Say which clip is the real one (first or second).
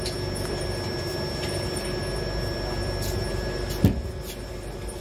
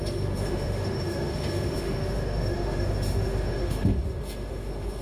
first